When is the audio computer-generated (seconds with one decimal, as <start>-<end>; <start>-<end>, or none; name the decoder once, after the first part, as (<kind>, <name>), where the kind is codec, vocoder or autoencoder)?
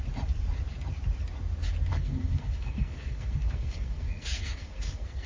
1.9-5.3 (codec, SNAC)